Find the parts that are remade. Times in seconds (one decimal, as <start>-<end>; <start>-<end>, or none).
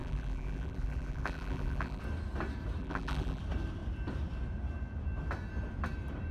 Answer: 0.0-2.0; 2.8-3.4